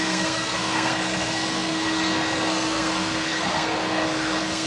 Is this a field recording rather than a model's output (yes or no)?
no